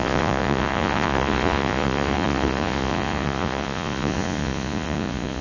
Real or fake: fake